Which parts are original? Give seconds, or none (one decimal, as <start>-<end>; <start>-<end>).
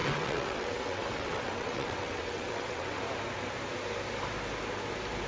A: 3.0-5.3